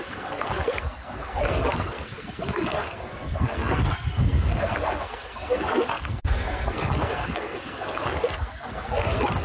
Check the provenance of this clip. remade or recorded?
remade